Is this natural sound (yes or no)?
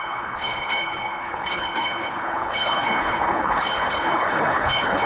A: no